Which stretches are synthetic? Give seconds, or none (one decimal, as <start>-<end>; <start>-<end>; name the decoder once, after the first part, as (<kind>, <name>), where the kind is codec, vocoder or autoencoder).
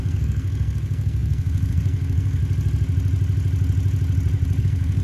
0.0-2.4 (codec, SNAC); 4.6-5.0